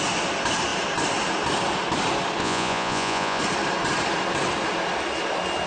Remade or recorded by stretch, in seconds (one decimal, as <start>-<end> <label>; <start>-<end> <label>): 0.0-2.4 recorded; 2.4-3.4 remade; 3.4-5.7 recorded